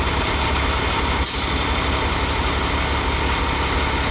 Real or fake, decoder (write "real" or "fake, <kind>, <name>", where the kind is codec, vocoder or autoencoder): real